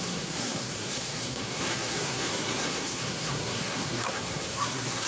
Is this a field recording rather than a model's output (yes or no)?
no